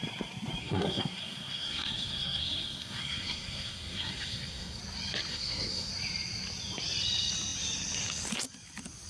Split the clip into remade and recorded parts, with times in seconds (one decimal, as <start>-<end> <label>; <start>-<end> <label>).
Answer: 0.0-0.6 recorded; 0.6-4.8 remade; 4.8-5.3 recorded; 5.3-5.9 remade; 5.9-9.1 recorded